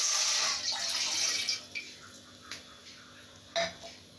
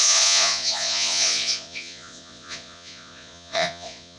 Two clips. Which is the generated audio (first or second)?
second